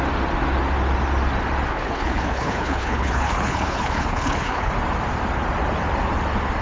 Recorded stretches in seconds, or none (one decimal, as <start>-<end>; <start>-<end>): 0.0-1.7; 4.7-6.6